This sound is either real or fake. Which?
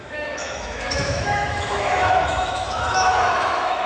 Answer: fake